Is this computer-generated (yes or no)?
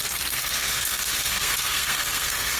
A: yes